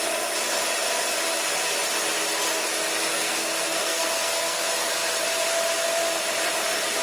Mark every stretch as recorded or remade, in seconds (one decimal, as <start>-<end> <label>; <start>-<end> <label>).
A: 0.0-3.1 recorded; 3.1-4.6 remade; 4.6-7.0 recorded